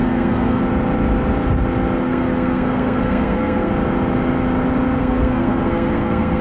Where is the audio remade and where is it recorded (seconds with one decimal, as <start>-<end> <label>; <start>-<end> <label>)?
0.0-0.6 remade; 0.6-2.0 recorded; 2.0-3.7 remade; 3.7-5.0 recorded; 5.0-6.4 remade